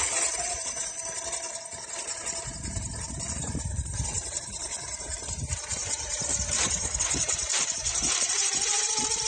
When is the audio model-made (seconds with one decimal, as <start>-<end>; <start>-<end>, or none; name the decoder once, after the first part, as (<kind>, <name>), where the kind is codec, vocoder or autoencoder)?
0.0-0.8 (vocoder, BigVGAN v2); 2.0-9.3